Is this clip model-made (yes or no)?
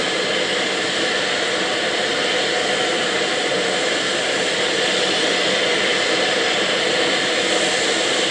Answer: no